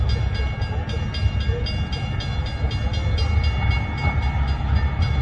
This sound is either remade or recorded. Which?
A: recorded